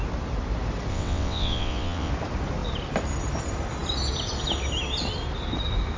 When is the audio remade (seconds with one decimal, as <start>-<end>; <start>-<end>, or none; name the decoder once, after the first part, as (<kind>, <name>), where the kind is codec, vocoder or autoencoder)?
0.9-2.1 (vocoder, WaveNeXt)